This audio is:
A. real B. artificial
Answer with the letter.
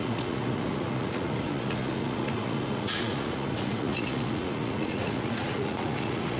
B